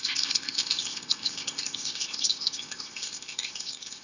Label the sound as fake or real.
fake